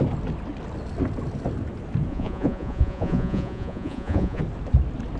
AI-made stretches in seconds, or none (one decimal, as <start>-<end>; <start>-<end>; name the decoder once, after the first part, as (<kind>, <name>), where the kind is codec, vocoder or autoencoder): 2.1-4.4 (vocoder, Vocos)